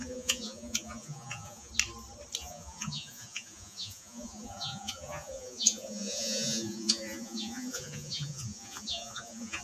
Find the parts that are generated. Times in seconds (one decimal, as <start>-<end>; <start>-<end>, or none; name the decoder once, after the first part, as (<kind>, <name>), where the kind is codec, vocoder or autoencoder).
0.0-1.7 (vocoder, Vocos); 2.4-9.6